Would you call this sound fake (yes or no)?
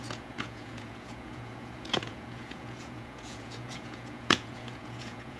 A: yes